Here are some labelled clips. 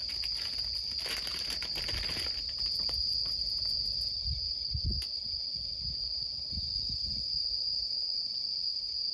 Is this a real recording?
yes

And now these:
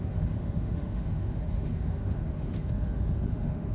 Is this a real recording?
no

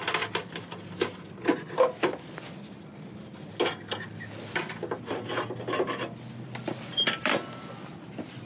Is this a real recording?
yes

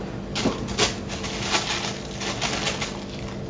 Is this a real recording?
yes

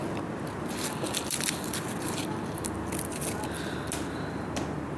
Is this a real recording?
yes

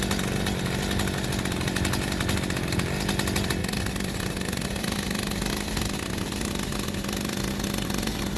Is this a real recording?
yes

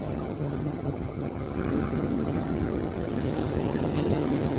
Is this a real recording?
no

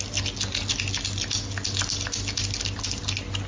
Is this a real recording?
yes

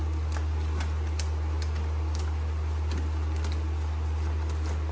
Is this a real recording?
yes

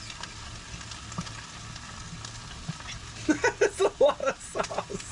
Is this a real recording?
yes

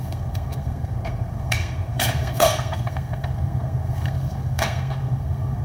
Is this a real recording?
no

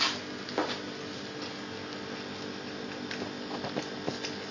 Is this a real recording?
yes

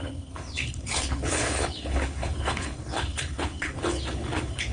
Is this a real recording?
no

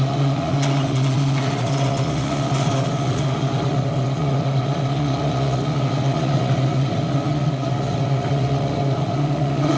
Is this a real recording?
no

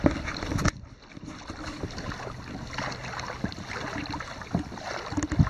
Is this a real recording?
yes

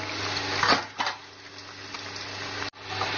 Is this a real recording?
yes